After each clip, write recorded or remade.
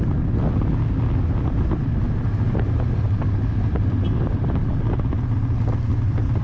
recorded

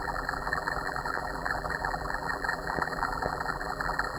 remade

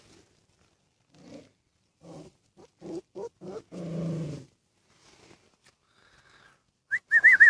recorded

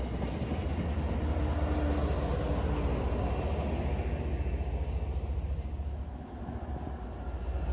recorded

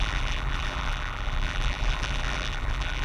remade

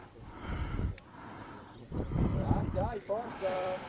remade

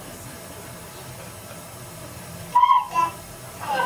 remade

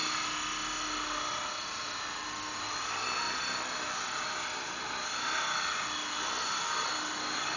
recorded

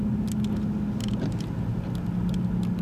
recorded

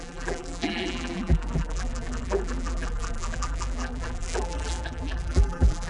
remade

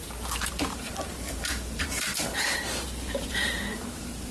remade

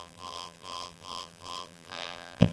remade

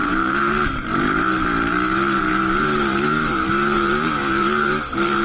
remade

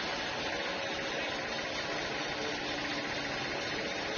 recorded